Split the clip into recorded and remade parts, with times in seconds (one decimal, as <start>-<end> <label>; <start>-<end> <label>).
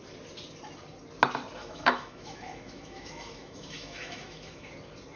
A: 0.0-1.6 recorded; 1.6-4.7 remade; 4.7-5.2 recorded